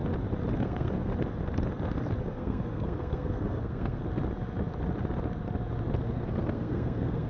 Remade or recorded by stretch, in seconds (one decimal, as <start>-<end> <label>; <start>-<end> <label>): 0.0-0.6 recorded; 0.6-1.1 remade; 1.1-2.2 recorded; 2.2-4.0 remade; 4.0-6.0 recorded; 6.0-7.3 remade